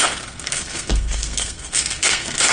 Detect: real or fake fake